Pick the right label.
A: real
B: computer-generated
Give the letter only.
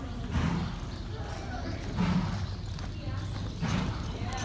A